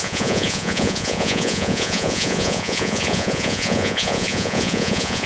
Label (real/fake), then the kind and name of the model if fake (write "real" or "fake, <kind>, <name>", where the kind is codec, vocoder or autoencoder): fake, vocoder, Vocos